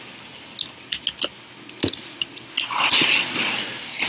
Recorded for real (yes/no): yes